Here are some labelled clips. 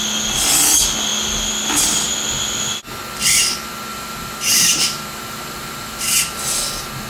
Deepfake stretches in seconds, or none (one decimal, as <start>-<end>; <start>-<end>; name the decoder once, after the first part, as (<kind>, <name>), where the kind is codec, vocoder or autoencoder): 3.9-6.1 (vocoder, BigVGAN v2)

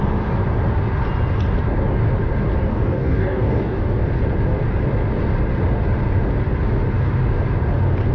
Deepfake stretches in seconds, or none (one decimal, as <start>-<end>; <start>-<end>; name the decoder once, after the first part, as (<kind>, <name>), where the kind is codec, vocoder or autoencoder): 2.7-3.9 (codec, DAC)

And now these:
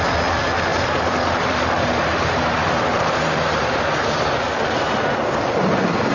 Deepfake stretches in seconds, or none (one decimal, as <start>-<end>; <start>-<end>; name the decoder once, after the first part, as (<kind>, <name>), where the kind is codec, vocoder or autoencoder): 0.7-4.4 (vocoder, BigVGAN v2)